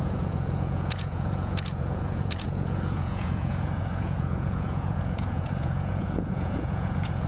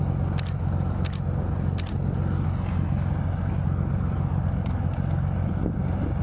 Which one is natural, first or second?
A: second